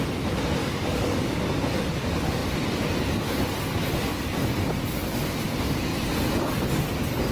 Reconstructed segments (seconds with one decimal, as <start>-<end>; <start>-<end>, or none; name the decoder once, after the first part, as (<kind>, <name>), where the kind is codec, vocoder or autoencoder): 0.6-1.4 (codec, DAC)